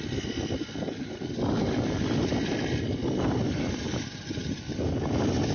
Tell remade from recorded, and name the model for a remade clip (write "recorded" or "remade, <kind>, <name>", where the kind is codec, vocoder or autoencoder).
recorded